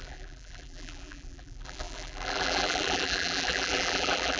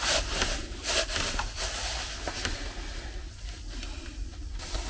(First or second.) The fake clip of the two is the first